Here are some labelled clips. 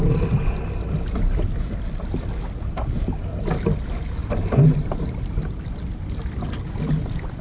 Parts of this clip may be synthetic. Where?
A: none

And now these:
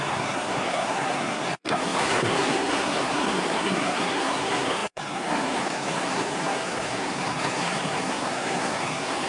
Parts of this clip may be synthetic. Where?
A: 0.0-9.3 (codec, SNAC)

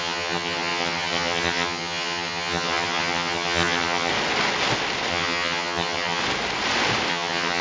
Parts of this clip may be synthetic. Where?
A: 0.0-4.1 (vocoder, HiFi-GAN); 5.1-6.2; 7.1-7.6